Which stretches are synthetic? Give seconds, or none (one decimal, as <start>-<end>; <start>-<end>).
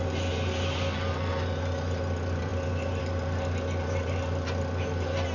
none